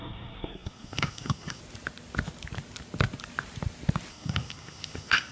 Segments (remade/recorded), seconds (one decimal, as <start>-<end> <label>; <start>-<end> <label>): 0.0-1.6 remade; 1.6-4.1 recorded; 4.1-5.3 remade